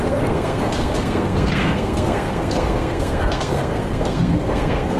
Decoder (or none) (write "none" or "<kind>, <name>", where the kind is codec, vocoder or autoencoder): codec, SNAC